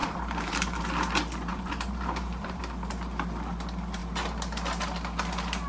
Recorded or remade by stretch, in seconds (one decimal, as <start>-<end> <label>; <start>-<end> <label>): 0.0-0.8 remade; 0.8-1.5 recorded; 1.5-2.6 remade; 2.6-5.7 recorded